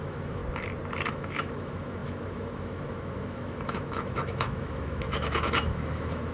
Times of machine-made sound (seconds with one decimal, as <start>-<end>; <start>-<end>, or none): 0.0-0.4; 1.1-6.3